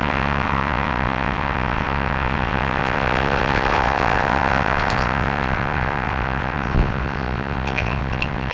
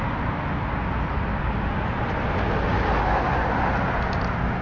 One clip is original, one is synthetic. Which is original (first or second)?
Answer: second